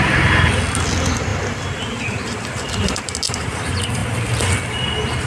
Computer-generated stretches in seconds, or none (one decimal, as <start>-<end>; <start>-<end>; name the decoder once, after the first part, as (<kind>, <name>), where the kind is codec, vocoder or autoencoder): none

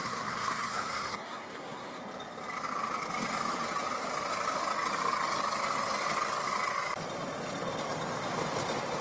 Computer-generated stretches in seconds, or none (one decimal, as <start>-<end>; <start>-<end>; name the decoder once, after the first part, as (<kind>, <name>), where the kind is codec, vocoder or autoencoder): 0.0-2.0 (codec, SNAC)

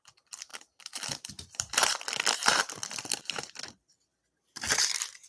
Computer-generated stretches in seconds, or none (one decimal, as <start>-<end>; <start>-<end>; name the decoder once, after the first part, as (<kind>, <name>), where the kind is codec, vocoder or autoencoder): 0.5-3.2 (vocoder, BigVGAN v2); 4.1-5.3